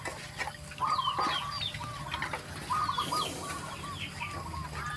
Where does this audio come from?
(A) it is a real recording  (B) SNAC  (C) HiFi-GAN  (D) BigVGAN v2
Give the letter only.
A